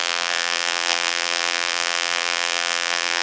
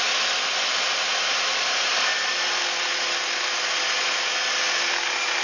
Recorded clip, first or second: second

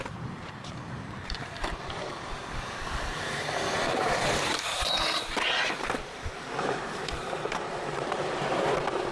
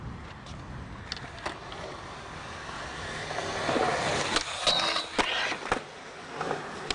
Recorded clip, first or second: second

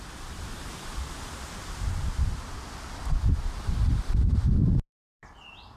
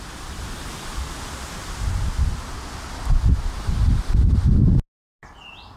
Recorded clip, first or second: second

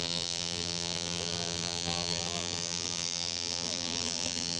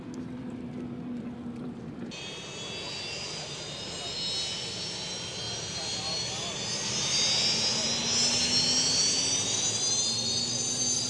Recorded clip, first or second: second